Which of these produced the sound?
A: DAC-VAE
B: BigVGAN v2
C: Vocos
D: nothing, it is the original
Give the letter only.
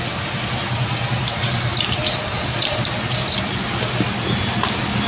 D